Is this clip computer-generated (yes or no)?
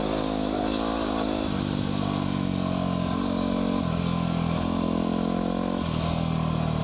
no